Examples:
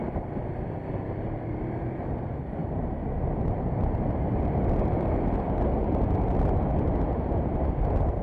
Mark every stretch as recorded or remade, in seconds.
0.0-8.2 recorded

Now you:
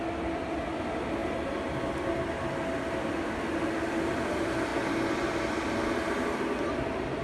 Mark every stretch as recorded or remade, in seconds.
0.0-7.2 recorded